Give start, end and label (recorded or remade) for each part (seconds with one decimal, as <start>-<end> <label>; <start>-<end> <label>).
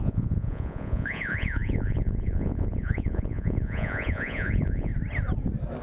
0.0-4.9 remade; 4.9-5.8 recorded